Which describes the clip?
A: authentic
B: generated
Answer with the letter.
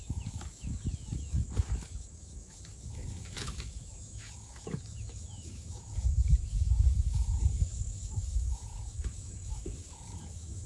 B